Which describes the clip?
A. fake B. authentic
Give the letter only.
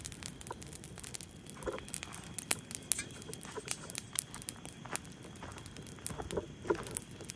B